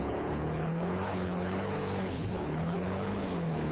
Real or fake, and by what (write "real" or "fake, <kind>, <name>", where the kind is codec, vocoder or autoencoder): fake, codec, HILCodec